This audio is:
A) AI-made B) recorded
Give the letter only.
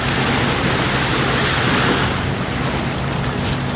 B